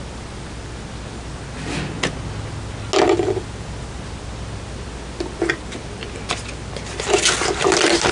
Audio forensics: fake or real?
real